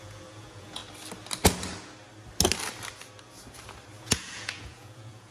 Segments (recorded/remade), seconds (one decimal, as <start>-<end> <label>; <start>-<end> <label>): 0.0-0.8 remade; 0.8-4.0 recorded; 4.0-5.3 remade